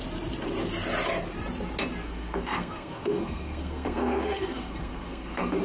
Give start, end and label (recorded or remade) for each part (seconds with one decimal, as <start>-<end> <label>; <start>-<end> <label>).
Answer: 0.0-2.0 recorded; 2.0-5.6 remade